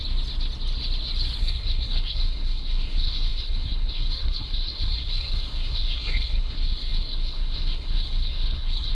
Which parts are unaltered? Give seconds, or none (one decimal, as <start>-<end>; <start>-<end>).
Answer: 0.0-1.4